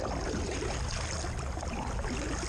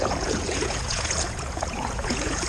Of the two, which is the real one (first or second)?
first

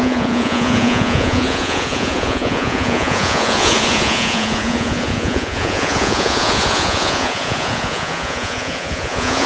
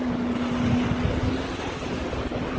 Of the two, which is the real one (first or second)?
second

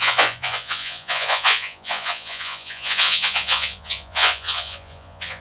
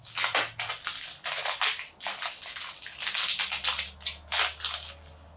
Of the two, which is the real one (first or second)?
second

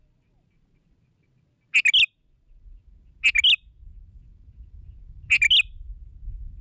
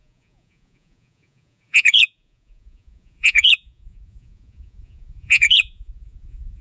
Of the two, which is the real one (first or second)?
first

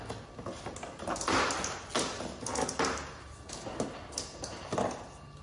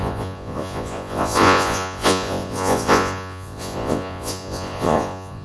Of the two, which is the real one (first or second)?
first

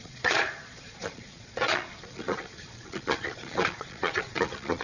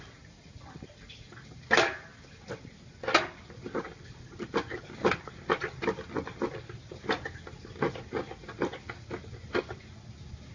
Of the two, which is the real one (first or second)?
second